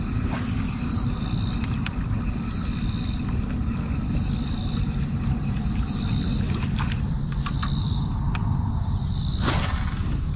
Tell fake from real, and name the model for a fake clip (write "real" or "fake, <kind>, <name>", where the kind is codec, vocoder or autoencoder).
real